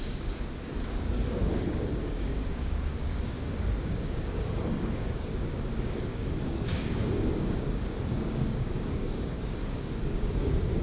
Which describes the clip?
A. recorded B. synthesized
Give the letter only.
B